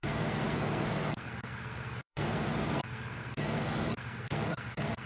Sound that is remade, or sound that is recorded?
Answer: remade